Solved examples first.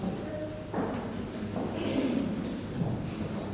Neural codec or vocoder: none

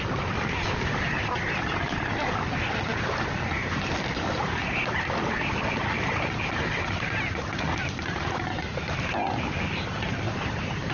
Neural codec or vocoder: none